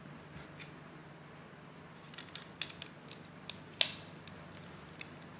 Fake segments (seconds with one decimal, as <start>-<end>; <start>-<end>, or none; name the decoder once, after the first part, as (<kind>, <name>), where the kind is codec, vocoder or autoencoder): none